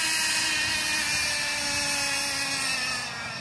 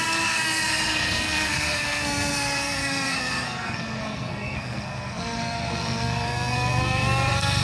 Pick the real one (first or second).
first